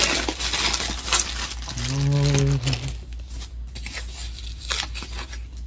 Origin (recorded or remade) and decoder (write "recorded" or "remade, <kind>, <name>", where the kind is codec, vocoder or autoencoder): recorded